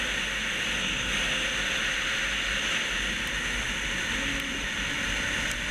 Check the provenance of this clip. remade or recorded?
recorded